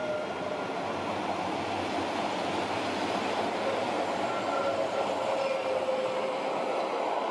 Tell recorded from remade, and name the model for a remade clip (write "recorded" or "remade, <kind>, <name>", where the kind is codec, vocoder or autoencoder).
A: recorded